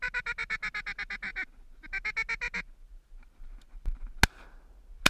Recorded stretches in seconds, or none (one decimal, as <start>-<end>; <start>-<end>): 0.0-5.1